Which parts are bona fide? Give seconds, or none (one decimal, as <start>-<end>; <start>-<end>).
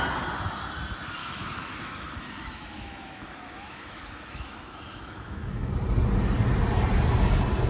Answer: 0.0-1.2; 5.7-7.7